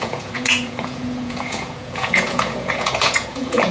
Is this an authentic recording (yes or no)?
no